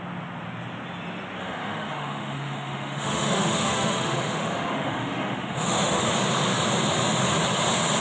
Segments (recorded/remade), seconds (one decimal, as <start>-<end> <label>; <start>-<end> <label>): 0.0-1.4 recorded; 1.4-6.1 remade; 6.1-8.0 recorded